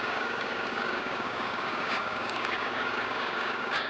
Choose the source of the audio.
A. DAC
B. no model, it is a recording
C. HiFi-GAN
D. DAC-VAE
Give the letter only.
A